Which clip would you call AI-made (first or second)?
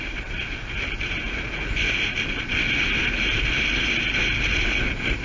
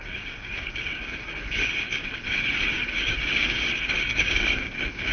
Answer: second